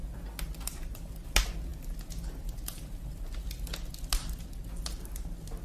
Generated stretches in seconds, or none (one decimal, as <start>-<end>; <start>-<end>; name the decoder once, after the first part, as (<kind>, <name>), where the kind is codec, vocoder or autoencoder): none